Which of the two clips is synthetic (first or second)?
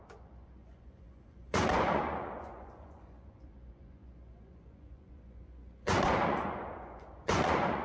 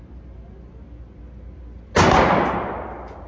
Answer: first